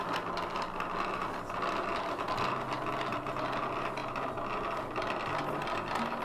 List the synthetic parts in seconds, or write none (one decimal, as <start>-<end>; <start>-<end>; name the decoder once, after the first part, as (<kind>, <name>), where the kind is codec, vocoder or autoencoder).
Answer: none